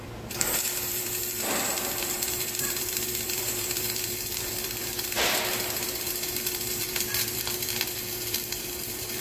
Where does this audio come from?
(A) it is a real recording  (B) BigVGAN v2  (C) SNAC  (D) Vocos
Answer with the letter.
B